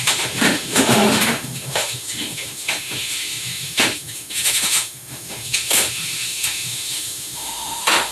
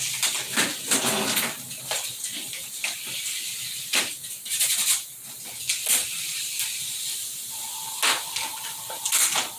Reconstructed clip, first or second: first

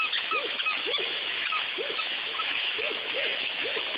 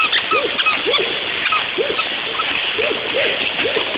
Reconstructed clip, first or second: first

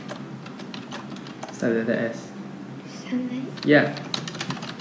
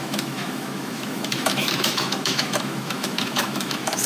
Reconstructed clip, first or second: second